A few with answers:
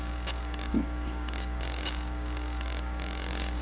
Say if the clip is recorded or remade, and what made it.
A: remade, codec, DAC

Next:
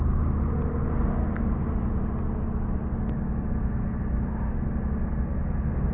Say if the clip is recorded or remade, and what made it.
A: recorded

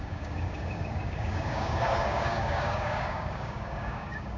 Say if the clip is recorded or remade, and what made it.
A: remade, codec, DAC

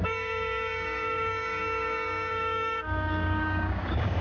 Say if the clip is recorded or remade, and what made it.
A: remade, codec, DAC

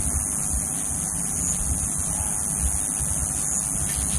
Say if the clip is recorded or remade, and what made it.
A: recorded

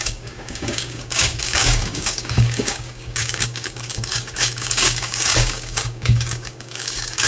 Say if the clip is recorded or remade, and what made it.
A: remade, codec, DAC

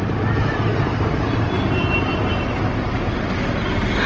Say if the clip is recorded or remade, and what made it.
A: recorded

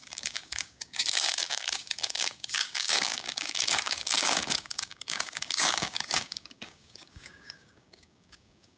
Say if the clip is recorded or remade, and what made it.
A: remade, codec, DAC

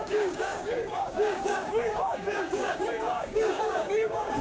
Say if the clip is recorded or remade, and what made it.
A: remade, codec, DAC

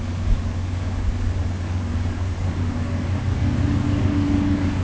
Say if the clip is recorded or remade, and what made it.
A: remade, codec, DAC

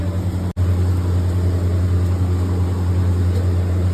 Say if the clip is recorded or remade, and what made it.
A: recorded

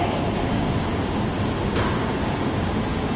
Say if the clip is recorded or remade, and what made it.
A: remade, codec, DAC